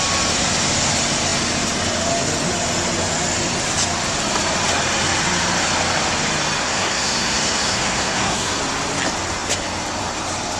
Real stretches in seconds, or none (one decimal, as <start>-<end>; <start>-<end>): 0.0-6.6; 8.6-10.6